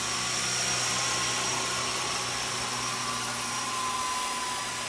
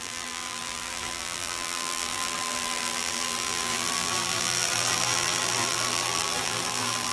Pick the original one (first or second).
first